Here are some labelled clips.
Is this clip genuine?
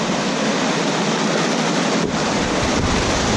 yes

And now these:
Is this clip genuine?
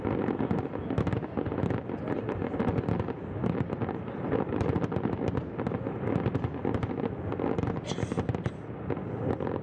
yes